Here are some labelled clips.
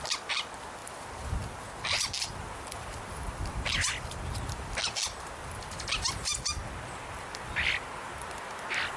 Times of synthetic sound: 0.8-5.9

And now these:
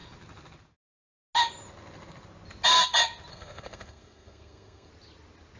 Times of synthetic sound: 3.3-4.9

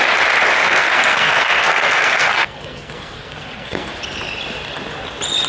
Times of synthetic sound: 0.6-3.9